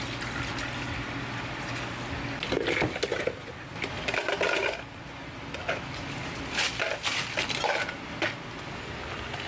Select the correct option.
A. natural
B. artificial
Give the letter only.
A